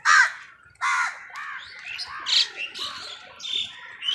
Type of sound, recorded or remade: recorded